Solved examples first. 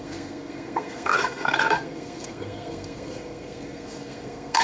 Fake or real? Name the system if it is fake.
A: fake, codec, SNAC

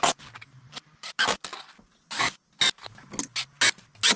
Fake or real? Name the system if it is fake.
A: real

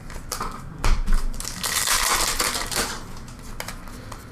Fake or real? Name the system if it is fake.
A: real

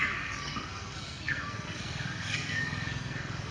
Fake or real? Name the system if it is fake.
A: fake, codec, SNAC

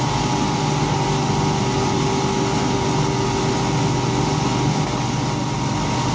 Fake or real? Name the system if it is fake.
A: real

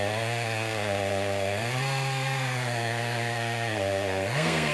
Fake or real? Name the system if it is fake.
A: fake, codec, SNAC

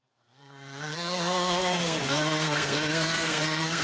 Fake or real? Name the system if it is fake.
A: fake, codec, SNAC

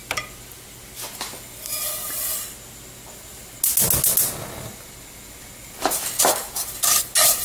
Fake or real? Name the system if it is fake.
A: real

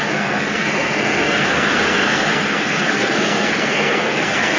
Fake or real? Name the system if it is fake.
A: fake, codec, SNAC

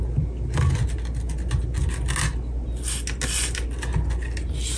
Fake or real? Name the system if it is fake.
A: real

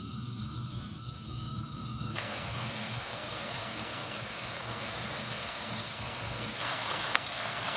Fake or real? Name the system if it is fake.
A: fake, codec, SNAC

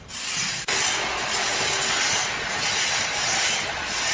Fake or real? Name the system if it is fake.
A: real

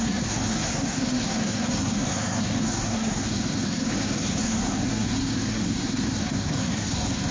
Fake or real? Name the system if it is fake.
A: fake, codec, SNAC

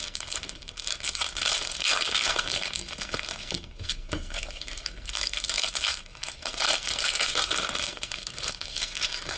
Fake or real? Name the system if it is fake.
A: fake, codec, SNAC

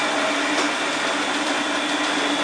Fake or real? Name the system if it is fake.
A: real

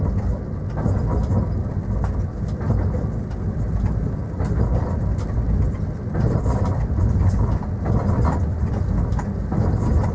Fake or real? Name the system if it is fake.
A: real